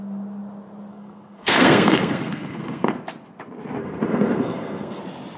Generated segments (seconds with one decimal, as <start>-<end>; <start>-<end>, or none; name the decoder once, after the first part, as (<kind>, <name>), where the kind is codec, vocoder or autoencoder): 0.9-3.0 (codec, SNAC); 3.8-5.0